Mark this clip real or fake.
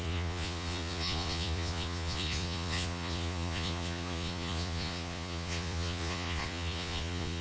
fake